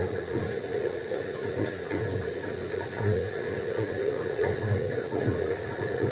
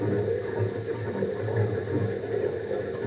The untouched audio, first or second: second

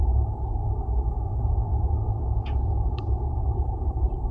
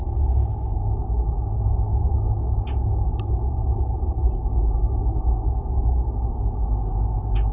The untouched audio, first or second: second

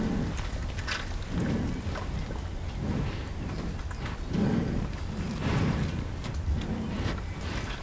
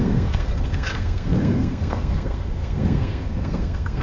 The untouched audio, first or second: first